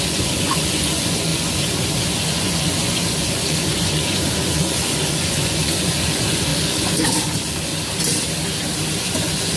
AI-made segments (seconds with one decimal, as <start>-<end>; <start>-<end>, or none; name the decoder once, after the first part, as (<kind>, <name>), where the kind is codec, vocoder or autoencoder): 0.0-7.7 (vocoder, Vocos); 9.0-9.6